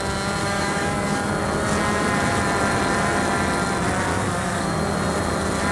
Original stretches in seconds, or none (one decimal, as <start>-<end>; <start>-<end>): 0.0-0.4; 1.3-4.1; 4.8-5.7